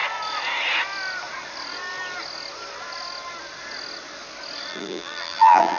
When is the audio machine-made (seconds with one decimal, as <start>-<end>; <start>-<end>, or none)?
4.7-5.8